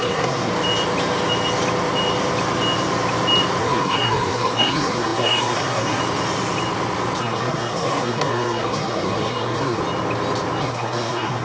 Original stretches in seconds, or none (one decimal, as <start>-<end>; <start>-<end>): 0.5-3.6; 6.0-7.2; 9.8-10.6